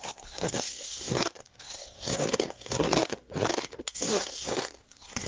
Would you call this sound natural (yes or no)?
no